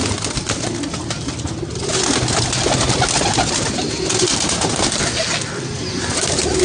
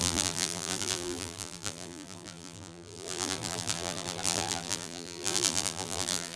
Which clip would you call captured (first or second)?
first